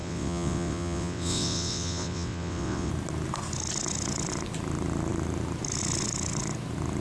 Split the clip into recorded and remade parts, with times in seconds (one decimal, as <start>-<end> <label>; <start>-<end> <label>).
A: 0.0-2.9 remade; 2.9-7.0 recorded